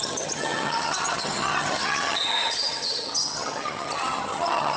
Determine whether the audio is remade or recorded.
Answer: remade